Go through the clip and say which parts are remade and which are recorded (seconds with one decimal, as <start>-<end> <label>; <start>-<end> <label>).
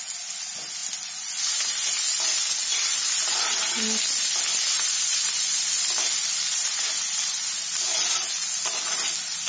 0.0-9.5 recorded